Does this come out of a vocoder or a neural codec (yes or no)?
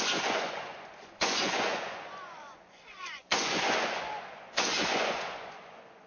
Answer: yes